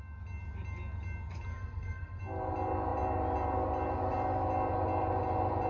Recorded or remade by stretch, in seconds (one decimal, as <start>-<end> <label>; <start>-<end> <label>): 0.0-1.5 recorded; 1.5-2.2 remade; 2.2-5.7 recorded